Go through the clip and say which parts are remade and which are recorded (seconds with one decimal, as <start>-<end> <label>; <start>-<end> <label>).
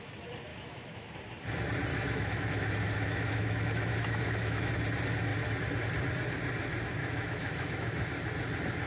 0.0-0.5 recorded; 0.5-1.2 remade; 1.2-1.9 recorded; 1.9-4.7 remade; 4.7-7.0 recorded; 7.0-8.1 remade; 8.1-8.9 recorded